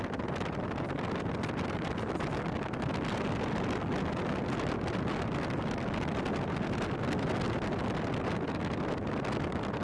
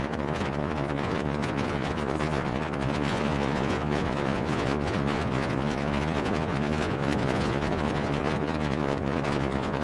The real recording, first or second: first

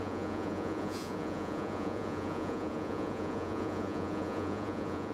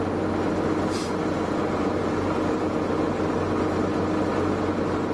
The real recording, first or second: second